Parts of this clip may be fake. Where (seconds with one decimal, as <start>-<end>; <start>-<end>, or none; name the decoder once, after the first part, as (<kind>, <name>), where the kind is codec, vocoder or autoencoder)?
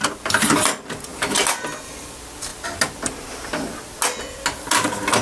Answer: none